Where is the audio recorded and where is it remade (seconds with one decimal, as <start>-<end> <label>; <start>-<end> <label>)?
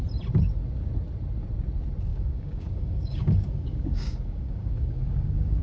0.0-2.1 recorded; 2.1-5.6 remade